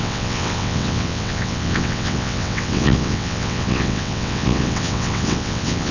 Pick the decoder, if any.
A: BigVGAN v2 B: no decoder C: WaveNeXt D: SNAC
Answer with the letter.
C